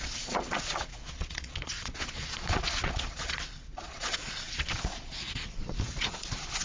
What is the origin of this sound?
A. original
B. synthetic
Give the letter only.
B